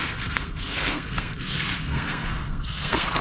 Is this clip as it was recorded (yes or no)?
no